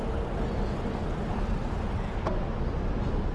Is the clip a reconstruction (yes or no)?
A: no